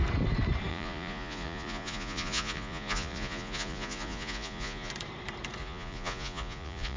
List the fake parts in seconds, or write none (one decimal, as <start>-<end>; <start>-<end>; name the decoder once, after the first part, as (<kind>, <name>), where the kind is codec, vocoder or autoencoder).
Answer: 0.7-4.9 (vocoder, Vocos); 5.6-7.0